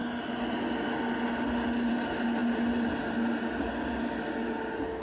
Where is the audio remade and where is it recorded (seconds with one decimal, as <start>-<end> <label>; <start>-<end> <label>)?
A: 0.0-5.0 recorded